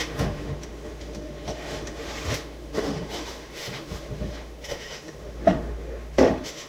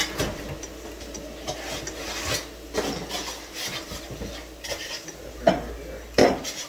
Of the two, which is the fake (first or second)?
first